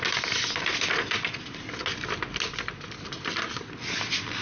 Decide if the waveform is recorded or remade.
recorded